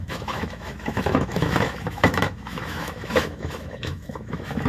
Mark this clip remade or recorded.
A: remade